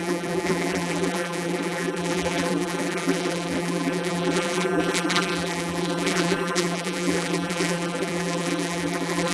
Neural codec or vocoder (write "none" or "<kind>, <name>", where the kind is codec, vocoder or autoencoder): vocoder, BigVGAN v2